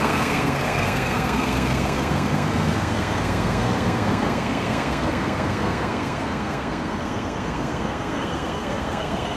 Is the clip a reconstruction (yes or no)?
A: yes